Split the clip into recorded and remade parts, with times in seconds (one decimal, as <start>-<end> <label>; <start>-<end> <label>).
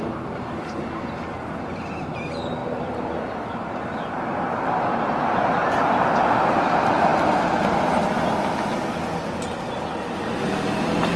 0.0-2.6 recorded; 2.6-5.2 remade; 5.2-11.2 recorded